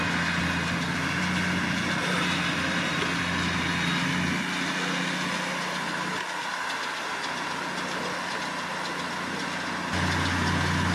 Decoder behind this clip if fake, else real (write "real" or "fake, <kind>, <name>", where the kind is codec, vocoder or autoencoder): real